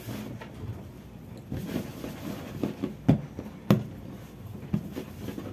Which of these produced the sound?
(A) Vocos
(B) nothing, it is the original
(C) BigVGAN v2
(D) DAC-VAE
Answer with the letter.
B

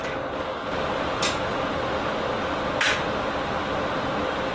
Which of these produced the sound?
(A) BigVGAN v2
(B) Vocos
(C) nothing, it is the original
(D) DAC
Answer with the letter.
C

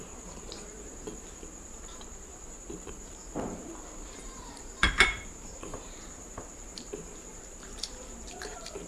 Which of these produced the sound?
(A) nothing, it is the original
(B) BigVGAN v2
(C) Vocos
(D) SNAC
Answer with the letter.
B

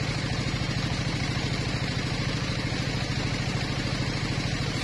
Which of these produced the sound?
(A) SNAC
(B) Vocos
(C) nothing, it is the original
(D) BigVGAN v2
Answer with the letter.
D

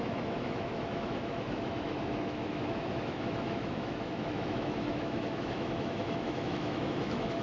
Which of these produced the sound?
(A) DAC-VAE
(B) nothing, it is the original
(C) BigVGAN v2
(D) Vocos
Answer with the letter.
A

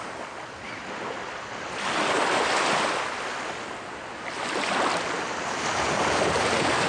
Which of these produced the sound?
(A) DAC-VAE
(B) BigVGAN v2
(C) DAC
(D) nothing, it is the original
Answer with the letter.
D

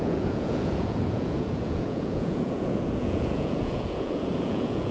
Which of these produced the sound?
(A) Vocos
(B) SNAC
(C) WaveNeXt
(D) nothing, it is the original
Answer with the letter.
A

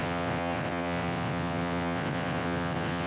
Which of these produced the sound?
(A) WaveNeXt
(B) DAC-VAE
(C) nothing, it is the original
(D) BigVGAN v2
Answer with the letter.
A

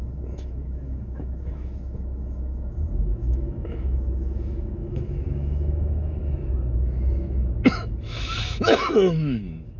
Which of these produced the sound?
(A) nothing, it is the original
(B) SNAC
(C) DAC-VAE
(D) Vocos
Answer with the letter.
C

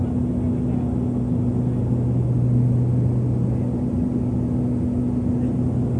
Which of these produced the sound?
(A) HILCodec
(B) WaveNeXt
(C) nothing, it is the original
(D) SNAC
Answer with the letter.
C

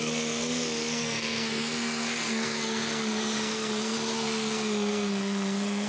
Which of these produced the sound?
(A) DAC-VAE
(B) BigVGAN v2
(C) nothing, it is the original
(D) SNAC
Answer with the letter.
D